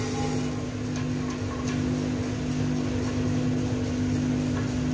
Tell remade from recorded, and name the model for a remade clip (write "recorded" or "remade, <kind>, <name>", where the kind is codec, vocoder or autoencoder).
recorded